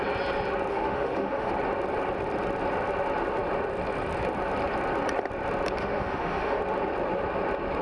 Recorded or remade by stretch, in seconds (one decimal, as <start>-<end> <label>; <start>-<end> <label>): 0.0-0.7 recorded; 0.7-1.5 remade; 1.5-5.8 recorded; 5.8-6.6 remade; 6.6-7.8 recorded